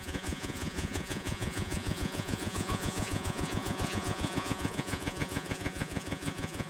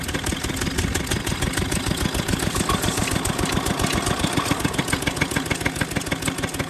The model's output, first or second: first